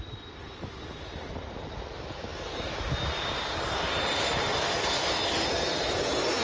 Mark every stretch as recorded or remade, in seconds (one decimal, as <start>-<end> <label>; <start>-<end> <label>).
0.0-6.4 recorded